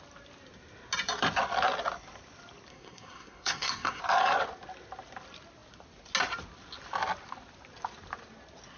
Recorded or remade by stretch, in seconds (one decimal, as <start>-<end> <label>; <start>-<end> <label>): 0.0-2.7 recorded; 2.7-4.0 remade; 4.0-8.8 recorded